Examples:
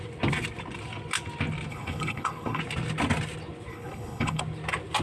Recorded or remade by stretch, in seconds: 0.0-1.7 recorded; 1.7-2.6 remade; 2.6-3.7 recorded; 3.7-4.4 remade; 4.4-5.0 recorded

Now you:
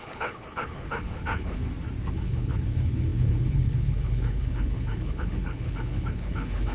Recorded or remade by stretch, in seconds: 0.0-1.6 remade; 1.6-2.1 recorded; 2.1-6.7 remade

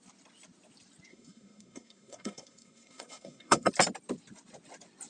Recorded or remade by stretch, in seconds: 0.0-1.1 recorded; 1.1-3.7 remade; 3.7-5.1 recorded

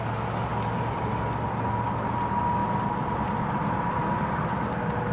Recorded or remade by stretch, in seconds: 0.0-0.5 recorded; 0.5-1.0 remade; 1.0-2.6 recorded; 2.6-4.3 remade; 4.3-5.1 recorded

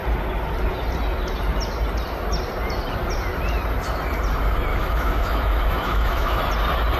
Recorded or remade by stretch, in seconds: 0.0-4.7 recorded; 4.7-6.4 remade; 6.4-7.0 recorded

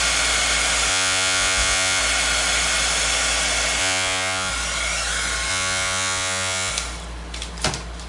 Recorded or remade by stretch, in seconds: 0.0-0.9 recorded; 0.9-2.0 remade; 2.0-3.8 recorded; 3.8-4.5 remade; 4.5-5.5 recorded; 5.5-6.7 remade; 6.7-8.1 recorded

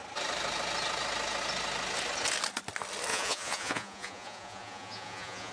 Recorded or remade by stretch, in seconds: 0.0-3.1 recorded; 3.1-5.5 remade

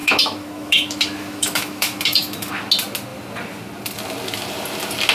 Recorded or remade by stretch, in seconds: 0.0-2.5 remade; 2.5-5.1 recorded